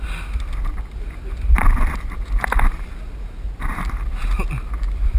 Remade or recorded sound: recorded